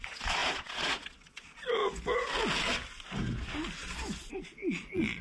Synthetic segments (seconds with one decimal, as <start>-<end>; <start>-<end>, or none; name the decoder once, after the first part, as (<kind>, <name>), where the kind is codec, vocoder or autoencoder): 0.0-1.8 (vocoder, Vocos); 4.3-5.2